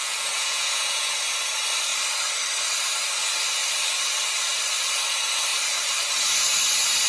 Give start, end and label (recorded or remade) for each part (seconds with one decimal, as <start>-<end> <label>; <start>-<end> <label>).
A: 0.0-1.2 remade; 1.2-7.1 recorded